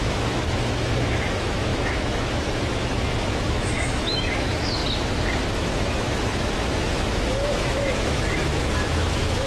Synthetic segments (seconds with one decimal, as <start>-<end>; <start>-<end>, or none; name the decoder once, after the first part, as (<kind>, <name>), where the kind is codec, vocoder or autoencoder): 0.0-4.8 (autoencoder, DAC-VAE); 5.6-9.5